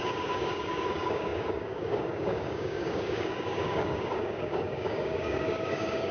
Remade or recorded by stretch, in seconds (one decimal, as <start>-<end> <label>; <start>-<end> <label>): 0.0-6.1 remade